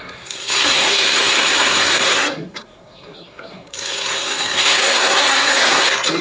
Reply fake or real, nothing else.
fake